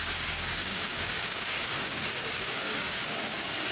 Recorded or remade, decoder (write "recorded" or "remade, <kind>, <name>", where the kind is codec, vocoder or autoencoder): remade, codec, DAC